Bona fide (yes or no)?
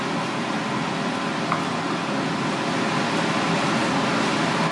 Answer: yes